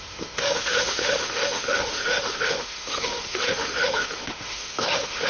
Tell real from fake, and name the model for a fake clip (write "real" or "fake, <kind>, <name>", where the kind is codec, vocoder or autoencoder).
fake, autoencoder, DAC-VAE